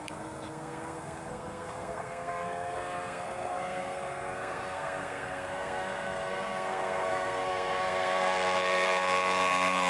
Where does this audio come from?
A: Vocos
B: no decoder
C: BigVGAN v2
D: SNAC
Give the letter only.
D